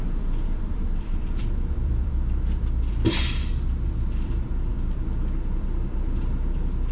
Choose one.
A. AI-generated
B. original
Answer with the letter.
A